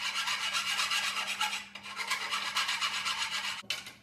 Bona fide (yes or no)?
yes